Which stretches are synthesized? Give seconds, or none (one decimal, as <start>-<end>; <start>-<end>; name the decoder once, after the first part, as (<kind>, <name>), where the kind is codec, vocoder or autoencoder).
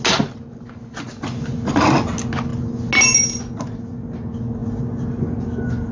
none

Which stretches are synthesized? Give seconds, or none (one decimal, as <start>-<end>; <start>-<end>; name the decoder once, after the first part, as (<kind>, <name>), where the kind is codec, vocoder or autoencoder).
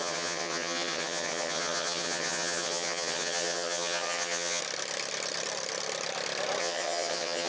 0.0-4.6 (vocoder, HiFi-GAN); 6.6-7.5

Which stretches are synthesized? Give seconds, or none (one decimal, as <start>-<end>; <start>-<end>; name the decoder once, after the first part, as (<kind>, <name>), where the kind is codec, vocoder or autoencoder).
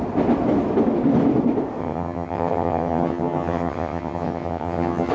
1.8-5.1 (vocoder, HiFi-GAN)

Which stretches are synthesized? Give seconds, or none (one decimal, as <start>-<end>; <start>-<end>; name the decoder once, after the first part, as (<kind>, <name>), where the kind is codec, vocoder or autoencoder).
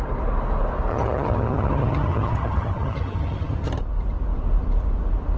0.9-3.8 (vocoder, HiFi-GAN)